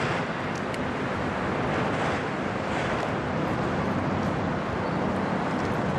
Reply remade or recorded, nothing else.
recorded